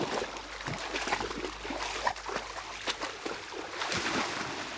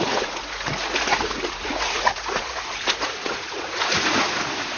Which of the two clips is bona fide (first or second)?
first